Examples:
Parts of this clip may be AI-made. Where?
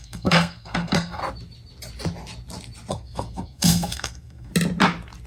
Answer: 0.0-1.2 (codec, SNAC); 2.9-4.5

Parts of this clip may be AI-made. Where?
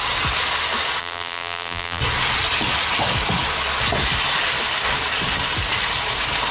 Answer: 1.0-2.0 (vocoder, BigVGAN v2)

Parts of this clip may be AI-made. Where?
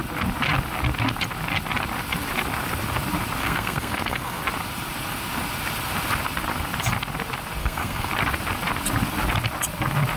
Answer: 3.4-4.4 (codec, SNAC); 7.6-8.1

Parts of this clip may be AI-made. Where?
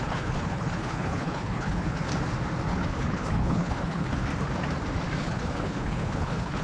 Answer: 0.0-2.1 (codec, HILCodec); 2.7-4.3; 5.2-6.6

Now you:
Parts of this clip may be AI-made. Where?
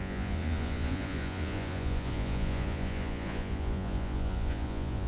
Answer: 0.0-5.1 (vocoder, Vocos)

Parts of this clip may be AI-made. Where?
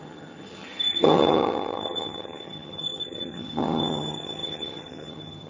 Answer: 0.0-5.5 (vocoder, HiFi-GAN)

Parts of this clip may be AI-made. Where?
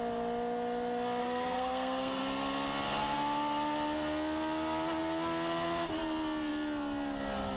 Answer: 1.2-2.2 (codec, SNAC)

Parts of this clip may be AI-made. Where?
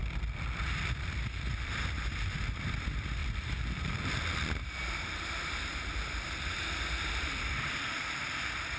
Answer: 0.0-8.8 (vocoder, BigVGAN v2)